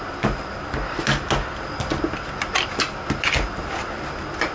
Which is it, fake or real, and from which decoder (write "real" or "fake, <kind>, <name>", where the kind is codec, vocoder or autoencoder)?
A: real